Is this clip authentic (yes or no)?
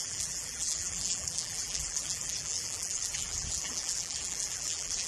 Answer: no